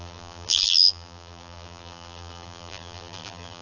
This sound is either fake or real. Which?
fake